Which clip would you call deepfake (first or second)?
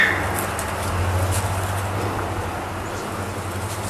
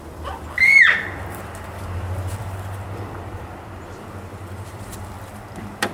second